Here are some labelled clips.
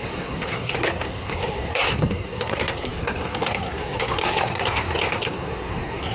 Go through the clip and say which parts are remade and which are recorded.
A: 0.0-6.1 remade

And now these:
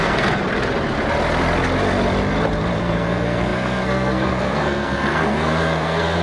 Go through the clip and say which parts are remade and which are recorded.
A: 0.0-0.4 remade; 0.4-2.8 recorded; 2.8-6.2 remade